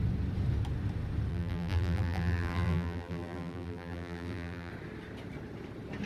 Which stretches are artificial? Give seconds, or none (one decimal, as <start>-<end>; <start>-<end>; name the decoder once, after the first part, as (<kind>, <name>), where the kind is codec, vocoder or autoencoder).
1.3-4.7 (vocoder, BigVGAN v2)